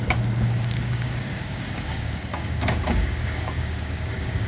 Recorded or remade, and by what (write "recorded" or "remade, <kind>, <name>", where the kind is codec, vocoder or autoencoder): remade, codec, DAC